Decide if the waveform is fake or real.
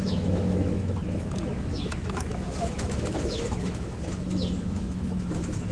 fake